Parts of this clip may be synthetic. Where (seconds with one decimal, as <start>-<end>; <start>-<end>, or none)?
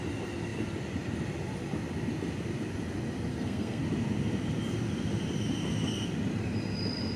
3.3-3.8